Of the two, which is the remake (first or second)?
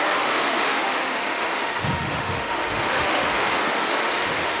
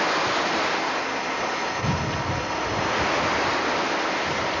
first